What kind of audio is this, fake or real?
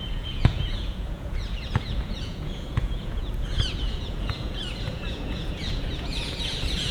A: fake